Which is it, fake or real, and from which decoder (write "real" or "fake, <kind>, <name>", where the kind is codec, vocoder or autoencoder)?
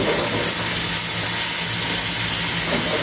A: real